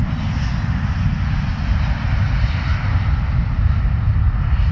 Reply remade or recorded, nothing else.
recorded